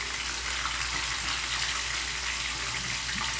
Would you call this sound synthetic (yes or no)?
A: no